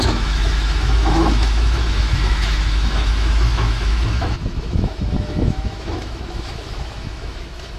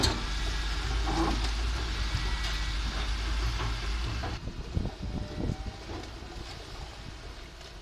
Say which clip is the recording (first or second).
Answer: second